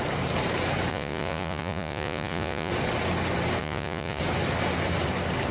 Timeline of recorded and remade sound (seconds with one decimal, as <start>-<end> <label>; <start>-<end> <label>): 0.0-0.9 recorded; 0.9-2.7 remade; 2.7-3.6 recorded; 3.6-4.2 remade; 4.2-5.5 recorded